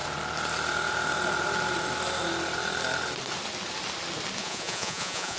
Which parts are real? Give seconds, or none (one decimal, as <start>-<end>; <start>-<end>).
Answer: 0.0-4.4